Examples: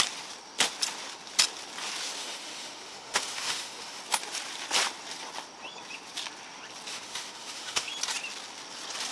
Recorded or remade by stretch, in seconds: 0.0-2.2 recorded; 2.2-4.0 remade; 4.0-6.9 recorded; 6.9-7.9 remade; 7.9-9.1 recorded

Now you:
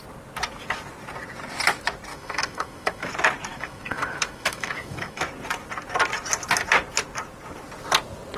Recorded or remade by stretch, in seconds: 0.0-2.1 recorded; 2.1-3.1 remade; 3.1-3.5 recorded; 3.5-5.2 remade; 5.2-8.4 recorded

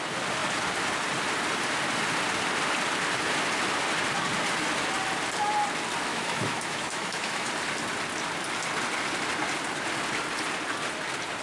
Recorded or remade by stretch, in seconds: 0.0-6.1 recorded; 6.1-7.5 remade; 7.5-11.4 recorded

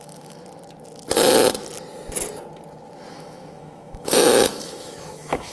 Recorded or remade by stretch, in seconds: 0.0-0.4 remade; 0.4-3.1 recorded; 3.1-5.5 remade